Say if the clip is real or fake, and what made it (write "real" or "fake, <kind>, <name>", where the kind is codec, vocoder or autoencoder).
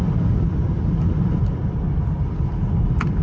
real